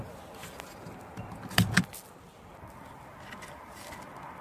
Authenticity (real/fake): real